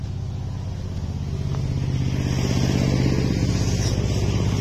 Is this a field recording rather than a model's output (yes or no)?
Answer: yes